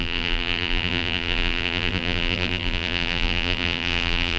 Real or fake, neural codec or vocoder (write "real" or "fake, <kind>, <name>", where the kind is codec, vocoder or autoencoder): fake, vocoder, BigVGAN v2